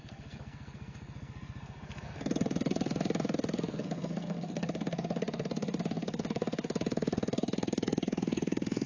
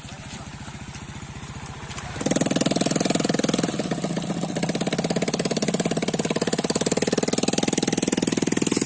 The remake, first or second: first